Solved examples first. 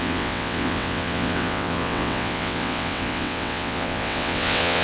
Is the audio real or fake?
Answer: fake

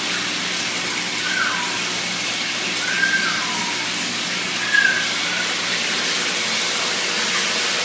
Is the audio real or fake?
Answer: real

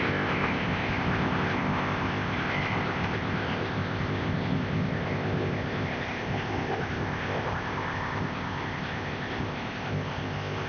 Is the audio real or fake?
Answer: fake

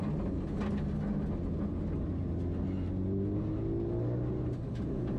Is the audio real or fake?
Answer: real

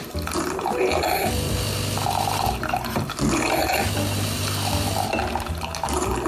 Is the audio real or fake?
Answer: real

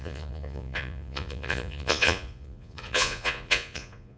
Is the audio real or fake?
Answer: fake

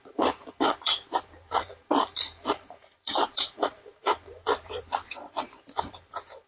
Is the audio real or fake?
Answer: fake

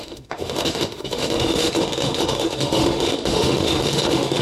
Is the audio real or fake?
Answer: fake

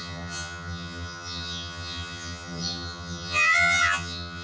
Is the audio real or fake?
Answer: fake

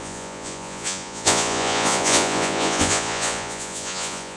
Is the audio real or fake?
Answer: fake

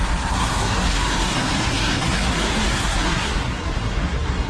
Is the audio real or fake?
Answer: fake